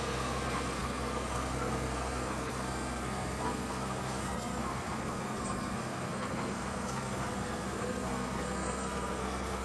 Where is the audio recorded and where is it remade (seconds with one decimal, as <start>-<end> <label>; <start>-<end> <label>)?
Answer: 0.0-9.6 remade